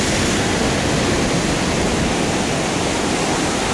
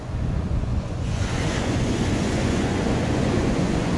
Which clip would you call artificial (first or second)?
second